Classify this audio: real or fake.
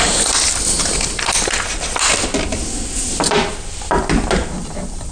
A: real